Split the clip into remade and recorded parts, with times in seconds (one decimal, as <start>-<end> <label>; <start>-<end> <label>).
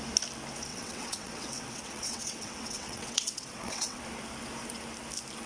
0.0-0.7 recorded; 0.7-4.0 remade; 4.0-5.5 recorded